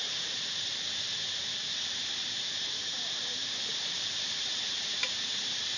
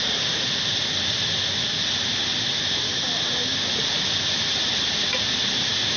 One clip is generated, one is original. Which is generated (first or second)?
first